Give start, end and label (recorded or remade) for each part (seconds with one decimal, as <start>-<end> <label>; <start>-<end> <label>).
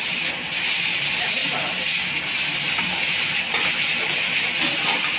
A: 0.0-5.2 recorded